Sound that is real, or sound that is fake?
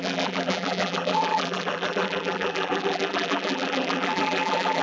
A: fake